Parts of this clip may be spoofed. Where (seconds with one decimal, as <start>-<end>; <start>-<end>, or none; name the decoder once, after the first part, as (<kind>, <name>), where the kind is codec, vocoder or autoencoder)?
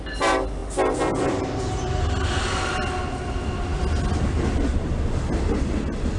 none